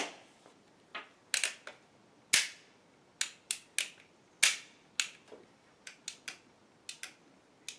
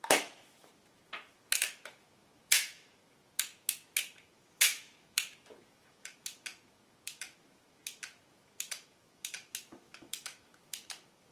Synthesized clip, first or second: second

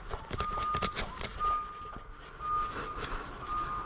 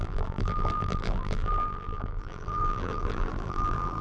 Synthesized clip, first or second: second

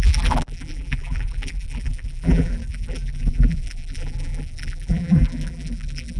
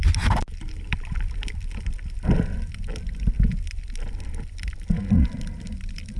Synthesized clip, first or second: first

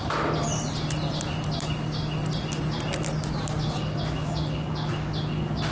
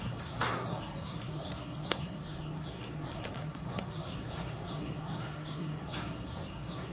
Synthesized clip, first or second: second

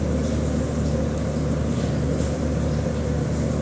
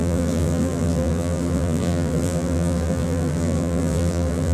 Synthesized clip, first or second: second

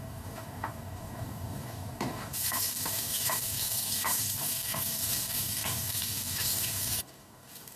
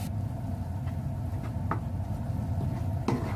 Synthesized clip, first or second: first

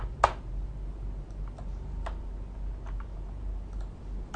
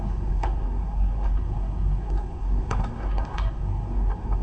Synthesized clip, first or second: second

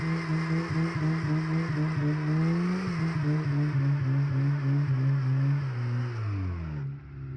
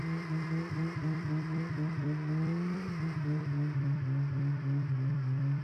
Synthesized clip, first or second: second